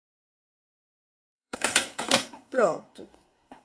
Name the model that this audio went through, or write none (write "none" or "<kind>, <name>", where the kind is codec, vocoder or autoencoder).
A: codec, SNAC